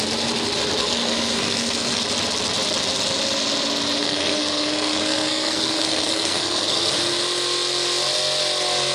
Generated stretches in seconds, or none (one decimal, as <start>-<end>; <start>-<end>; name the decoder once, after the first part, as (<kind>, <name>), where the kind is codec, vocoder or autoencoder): 0.8-2.0 (codec, SNAC); 4.0-6.9

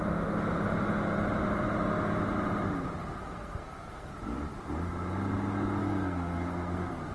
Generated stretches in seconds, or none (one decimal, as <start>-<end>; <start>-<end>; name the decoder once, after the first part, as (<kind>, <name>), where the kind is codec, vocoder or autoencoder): 3.2-4.1 (codec, SNAC); 5.8-7.1

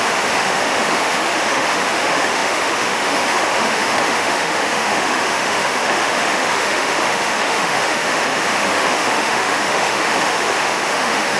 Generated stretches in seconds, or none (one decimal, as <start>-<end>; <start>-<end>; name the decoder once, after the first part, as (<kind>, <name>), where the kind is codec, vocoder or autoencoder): 0.0-11.4 (autoencoder, DAC-VAE)

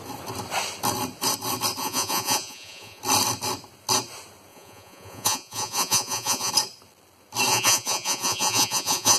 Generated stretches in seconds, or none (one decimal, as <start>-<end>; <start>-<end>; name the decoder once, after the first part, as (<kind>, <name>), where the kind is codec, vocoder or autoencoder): 1.8-3.0 (vocoder, Vocos); 4.5-6.5; 7.5-9.2

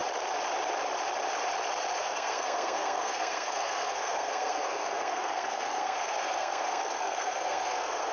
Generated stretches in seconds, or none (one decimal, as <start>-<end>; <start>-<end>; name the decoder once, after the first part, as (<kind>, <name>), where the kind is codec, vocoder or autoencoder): 2.0-8.1 (codec, SNAC)

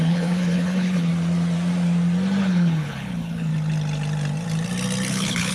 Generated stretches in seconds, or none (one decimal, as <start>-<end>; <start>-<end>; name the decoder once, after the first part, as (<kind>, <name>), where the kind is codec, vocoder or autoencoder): 0.0-1.1 (codec, HILCodec); 2.4-3.5; 5.1-5.5

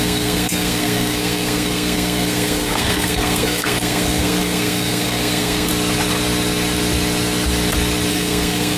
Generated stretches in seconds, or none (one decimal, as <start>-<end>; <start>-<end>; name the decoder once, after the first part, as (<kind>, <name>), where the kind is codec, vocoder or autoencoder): 0.0-5.7 (codec, SNAC); 8.1-8.8